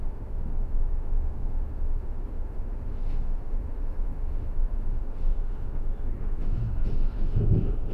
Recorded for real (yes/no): no